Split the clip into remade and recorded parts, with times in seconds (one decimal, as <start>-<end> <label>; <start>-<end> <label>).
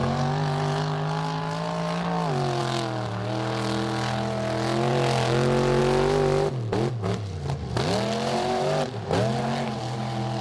0.0-10.4 recorded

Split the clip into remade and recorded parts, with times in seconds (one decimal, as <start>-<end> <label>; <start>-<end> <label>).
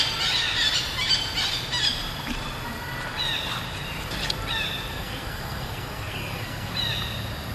0.0-4.9 recorded; 4.9-6.7 remade; 6.7-7.5 recorded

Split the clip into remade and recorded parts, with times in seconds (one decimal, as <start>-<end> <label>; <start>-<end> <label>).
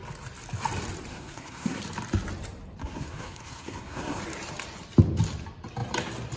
0.0-1.1 recorded; 1.1-1.8 remade; 1.8-2.8 recorded; 2.8-4.2 remade; 4.2-6.4 recorded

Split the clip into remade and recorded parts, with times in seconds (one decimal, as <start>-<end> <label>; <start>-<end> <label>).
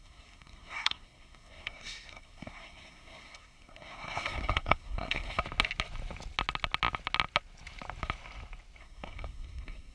0.0-5.4 remade; 5.4-8.8 recorded; 8.8-9.9 remade